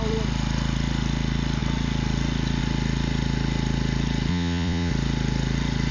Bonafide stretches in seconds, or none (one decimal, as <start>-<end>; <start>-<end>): 0.0-4.3; 4.9-5.9